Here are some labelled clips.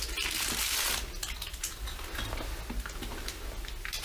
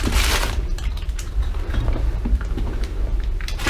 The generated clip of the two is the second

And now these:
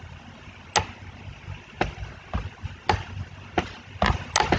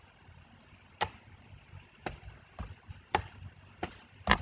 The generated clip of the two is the second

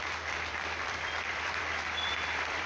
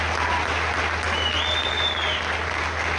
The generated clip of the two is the first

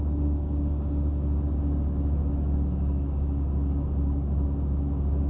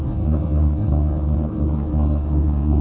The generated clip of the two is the second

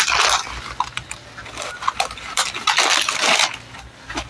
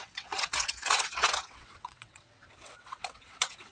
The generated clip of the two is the second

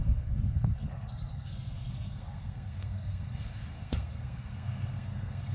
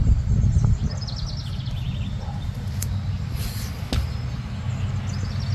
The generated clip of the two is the first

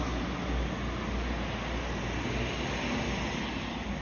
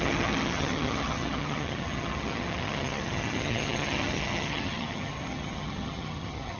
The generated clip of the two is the second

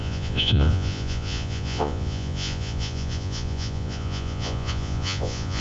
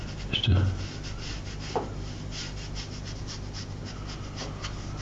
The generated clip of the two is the first